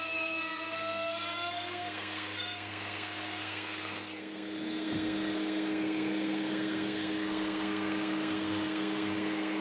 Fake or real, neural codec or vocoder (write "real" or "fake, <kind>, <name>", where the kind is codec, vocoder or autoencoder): fake, codec, SNAC